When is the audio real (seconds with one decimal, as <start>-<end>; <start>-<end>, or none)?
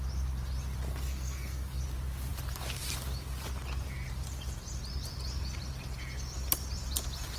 0.0-0.9; 1.8-7.4